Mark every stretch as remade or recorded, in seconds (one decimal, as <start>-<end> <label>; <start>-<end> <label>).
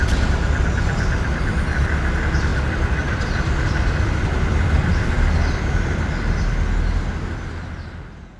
0.0-8.4 recorded